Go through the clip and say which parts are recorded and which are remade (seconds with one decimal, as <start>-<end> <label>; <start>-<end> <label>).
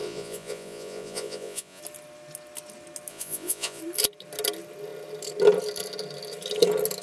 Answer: 0.0-1.8 remade; 1.8-3.1 recorded; 3.1-3.8 remade; 3.8-7.0 recorded